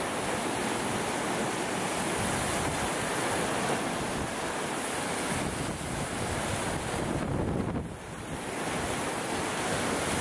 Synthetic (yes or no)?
no